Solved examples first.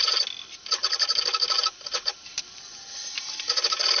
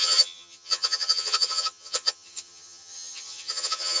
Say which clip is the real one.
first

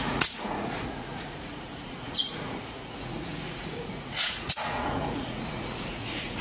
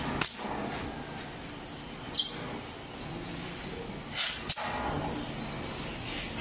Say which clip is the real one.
second